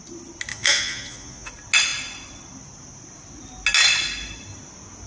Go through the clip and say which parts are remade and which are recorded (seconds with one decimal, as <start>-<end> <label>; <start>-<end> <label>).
0.0-0.5 recorded; 0.5-1.5 remade; 1.5-5.1 recorded